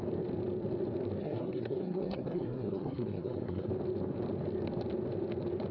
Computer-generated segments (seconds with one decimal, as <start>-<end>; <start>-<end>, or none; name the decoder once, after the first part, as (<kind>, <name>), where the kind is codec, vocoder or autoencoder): 1.2-3.7 (codec, SNAC)